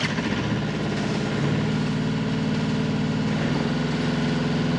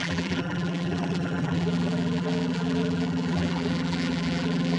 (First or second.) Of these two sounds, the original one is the first